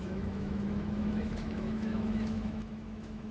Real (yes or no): no